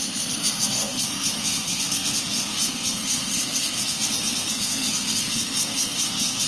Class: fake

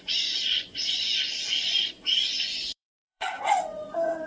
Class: fake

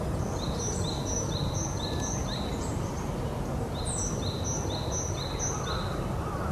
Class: real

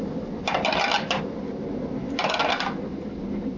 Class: real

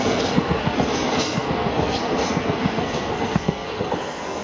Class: fake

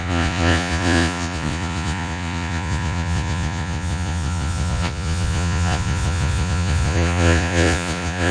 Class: fake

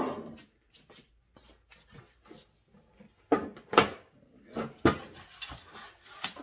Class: real